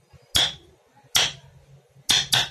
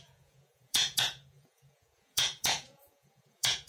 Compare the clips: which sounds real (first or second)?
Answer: first